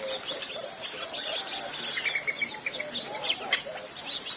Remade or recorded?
recorded